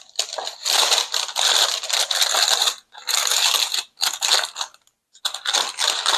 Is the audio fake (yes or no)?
no